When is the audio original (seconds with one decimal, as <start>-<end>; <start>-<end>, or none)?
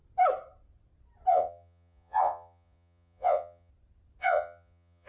0.0-1.3; 3.7-4.2